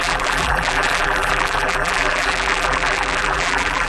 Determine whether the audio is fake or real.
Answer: fake